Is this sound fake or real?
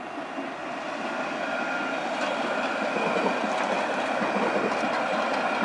real